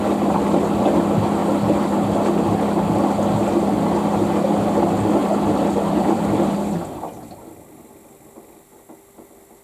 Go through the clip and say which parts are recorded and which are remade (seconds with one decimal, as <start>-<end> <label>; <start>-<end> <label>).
0.0-5.2 recorded; 5.2-6.2 remade; 6.2-9.6 recorded